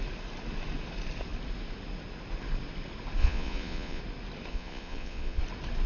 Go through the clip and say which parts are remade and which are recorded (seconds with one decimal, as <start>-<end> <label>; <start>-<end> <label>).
0.0-3.2 recorded; 3.2-4.0 remade; 4.0-4.5 recorded; 4.5-5.4 remade; 5.4-5.9 recorded